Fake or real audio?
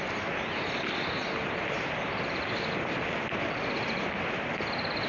real